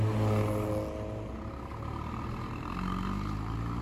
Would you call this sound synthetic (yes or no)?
no